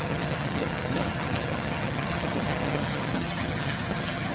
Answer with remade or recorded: remade